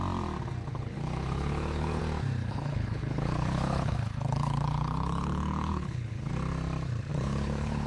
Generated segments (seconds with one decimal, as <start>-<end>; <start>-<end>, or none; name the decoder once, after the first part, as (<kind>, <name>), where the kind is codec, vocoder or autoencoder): 0.7-2.0 (codec, HILCodec); 2.4-6.3; 7.1-7.9